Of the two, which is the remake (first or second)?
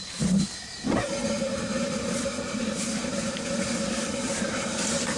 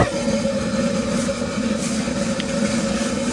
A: first